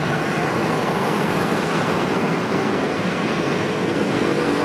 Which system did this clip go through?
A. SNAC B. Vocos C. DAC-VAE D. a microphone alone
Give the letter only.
A